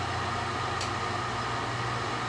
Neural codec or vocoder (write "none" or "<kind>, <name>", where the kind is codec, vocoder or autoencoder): none